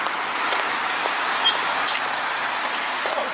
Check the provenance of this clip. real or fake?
real